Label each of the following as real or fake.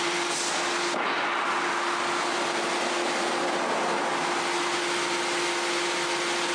real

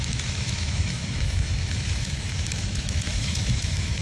fake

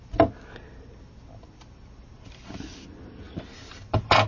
real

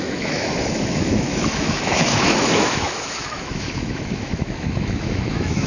fake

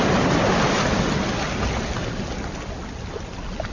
real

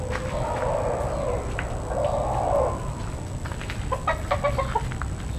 real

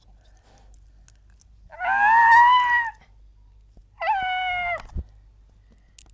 real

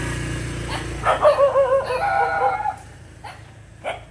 real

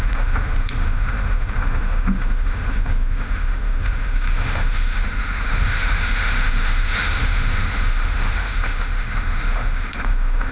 fake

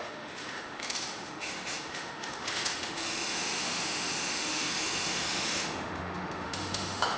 fake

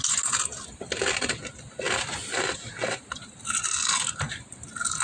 real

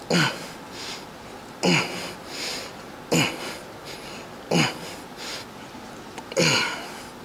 real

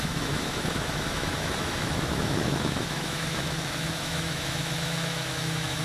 fake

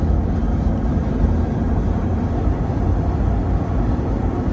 real